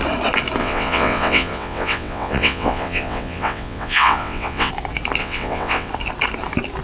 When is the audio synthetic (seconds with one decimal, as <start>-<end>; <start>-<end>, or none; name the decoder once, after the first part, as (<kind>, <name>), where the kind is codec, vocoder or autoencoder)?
0.6-4.7 (vocoder, WaveNeXt); 5.2-5.9